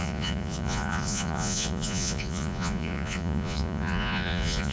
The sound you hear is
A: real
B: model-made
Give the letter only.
B